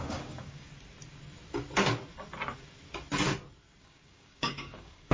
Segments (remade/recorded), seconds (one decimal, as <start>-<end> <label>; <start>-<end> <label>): 0.0-0.7 remade; 0.7-3.8 recorded; 3.8-5.1 remade